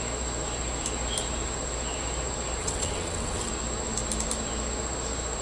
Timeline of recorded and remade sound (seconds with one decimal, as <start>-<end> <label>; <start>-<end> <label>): 0.0-2.6 recorded; 2.6-3.5 remade; 3.5-5.4 recorded